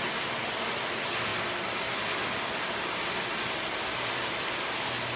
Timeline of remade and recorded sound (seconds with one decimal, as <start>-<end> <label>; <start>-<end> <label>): 0.0-5.2 recorded